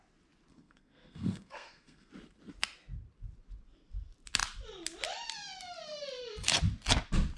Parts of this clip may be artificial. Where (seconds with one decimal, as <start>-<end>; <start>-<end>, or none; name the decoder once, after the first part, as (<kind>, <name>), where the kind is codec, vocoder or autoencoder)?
0.5-2.1 (codec, SNAC)